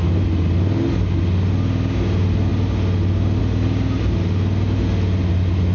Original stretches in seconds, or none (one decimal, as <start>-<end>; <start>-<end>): 0.0-5.7